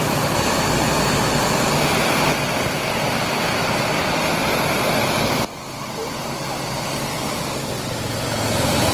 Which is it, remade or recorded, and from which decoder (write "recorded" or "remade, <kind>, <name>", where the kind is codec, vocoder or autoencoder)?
recorded